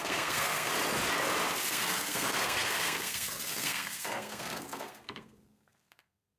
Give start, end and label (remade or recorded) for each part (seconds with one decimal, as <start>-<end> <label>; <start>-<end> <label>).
0.0-0.7 remade; 0.7-1.7 recorded; 1.7-6.4 remade